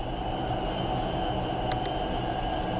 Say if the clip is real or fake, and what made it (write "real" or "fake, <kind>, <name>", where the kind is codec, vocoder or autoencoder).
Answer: real